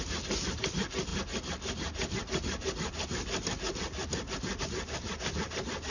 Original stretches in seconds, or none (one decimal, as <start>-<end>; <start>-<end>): 0.0-5.9